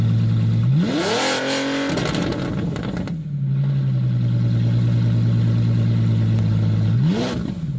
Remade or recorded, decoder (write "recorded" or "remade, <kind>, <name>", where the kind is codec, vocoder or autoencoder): recorded